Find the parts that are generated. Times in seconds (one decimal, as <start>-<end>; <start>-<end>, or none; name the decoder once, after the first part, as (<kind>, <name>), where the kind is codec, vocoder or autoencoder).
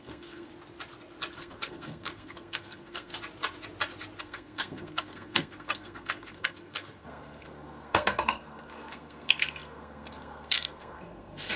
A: 0.0-0.5 (codec, SNAC); 1.4-3.1; 4.2-11.6